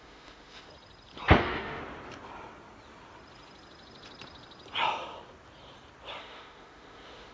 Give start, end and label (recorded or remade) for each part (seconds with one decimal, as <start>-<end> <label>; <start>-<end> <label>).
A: 0.0-0.7 remade; 0.7-1.4 recorded; 1.4-1.8 remade; 1.8-6.2 recorded; 6.2-7.3 remade